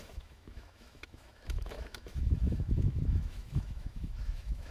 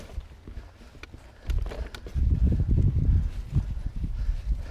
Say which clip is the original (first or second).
second